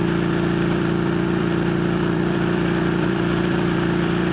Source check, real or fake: fake